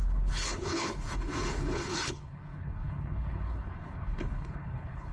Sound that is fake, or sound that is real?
fake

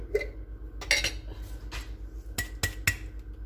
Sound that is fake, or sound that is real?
real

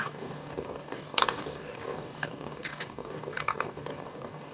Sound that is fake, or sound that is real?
fake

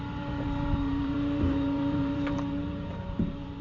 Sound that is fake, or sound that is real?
fake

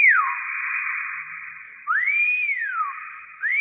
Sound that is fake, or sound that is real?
fake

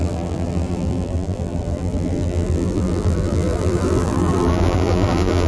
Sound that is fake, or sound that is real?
fake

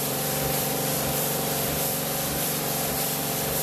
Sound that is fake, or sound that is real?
fake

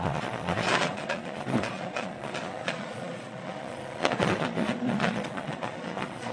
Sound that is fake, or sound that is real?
fake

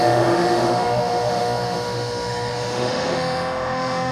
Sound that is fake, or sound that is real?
fake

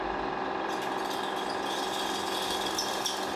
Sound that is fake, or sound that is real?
real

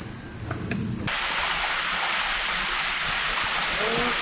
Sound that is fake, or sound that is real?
real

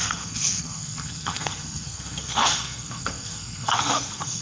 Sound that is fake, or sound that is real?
fake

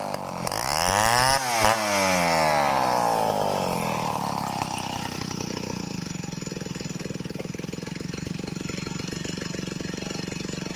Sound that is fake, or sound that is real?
real